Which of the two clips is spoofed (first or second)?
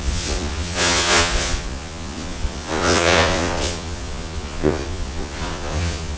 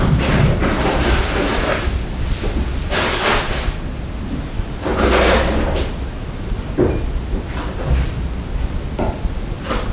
first